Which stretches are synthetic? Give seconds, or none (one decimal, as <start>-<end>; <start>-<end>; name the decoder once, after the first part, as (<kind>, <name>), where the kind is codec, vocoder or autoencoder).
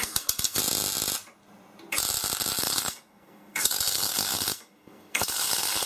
0.0-0.6 (codec, SNAC); 2.6-5.9